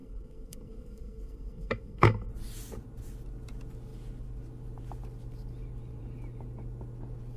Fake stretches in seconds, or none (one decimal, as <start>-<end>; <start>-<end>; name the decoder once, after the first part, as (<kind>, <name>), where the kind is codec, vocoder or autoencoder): 0.0-2.3 (codec, SNAC)